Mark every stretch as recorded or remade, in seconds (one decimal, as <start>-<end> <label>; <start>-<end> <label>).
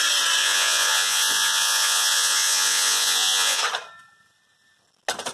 0.0-0.4 recorded; 0.4-3.6 remade; 3.6-5.3 recorded